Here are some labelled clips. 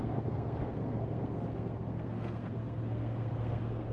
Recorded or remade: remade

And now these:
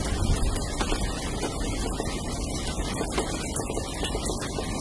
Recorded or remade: recorded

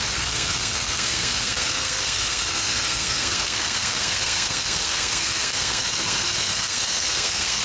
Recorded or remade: remade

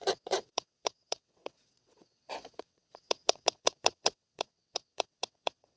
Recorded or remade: remade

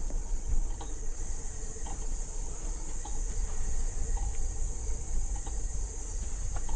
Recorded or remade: recorded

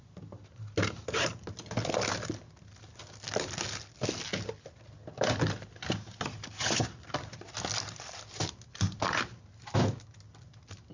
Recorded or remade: recorded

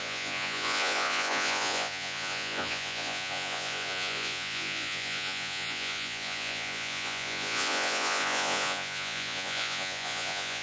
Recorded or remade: remade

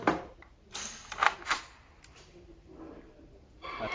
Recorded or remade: recorded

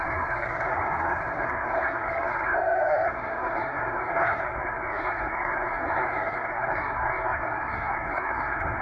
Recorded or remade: remade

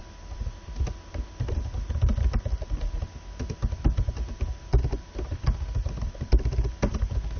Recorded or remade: recorded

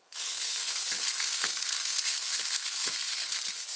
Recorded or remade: remade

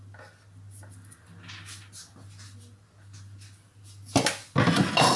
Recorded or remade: recorded